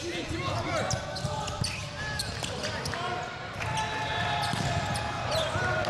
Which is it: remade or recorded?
recorded